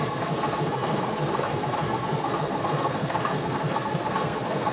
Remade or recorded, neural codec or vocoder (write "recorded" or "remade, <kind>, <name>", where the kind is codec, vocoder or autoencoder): remade, codec, SNAC